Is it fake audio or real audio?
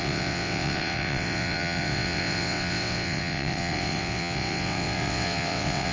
fake